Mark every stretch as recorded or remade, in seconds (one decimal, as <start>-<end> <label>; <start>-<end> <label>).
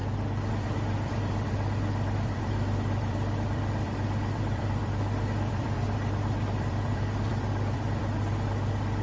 0.0-0.5 recorded; 0.5-9.0 remade